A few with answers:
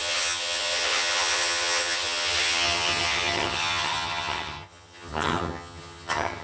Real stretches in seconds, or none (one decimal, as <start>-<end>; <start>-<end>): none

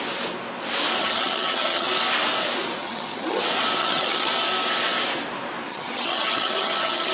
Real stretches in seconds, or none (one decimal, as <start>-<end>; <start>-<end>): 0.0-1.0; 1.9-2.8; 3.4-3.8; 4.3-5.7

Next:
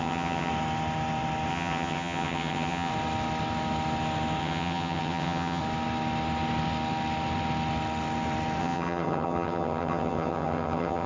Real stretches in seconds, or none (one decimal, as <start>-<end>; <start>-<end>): 0.5-1.5; 2.9-4.4; 5.6-8.6

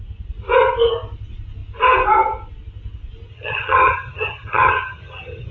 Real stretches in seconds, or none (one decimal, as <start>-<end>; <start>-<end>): 0.0-3.3

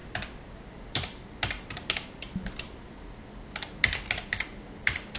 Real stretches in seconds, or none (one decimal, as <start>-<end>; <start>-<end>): 0.0-5.2